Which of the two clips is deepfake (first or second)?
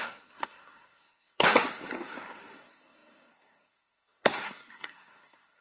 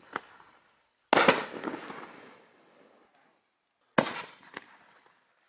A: first